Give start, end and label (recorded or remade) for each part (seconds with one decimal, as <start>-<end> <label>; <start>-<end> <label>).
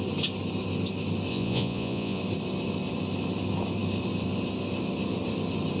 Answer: 0.0-1.3 recorded; 1.3-2.2 remade; 2.2-5.8 recorded